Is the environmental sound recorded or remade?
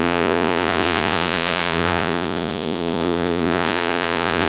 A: remade